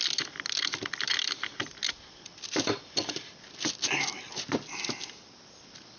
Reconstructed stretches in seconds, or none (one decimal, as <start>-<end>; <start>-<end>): none